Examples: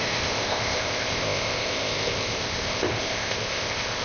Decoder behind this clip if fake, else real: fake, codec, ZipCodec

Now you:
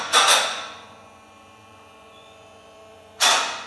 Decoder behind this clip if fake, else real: fake, vocoder, Vocos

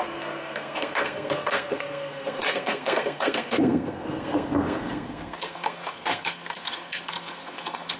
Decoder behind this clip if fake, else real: fake, codec, SNAC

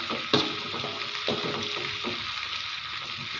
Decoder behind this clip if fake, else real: real